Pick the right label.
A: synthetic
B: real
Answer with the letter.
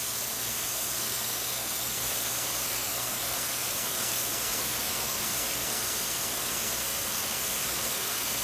A